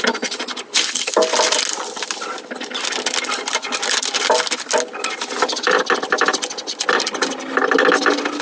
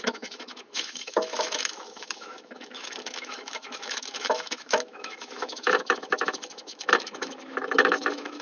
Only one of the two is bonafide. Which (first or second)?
first